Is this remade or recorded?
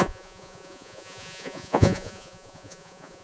remade